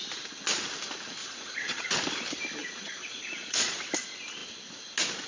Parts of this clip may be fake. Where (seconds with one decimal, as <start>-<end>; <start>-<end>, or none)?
1.2-1.9; 2.6-3.8